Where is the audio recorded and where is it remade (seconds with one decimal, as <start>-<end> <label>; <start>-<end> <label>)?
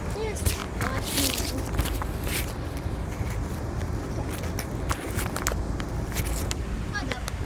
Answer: 0.0-0.6 recorded; 0.6-1.5 remade; 1.5-7.4 recorded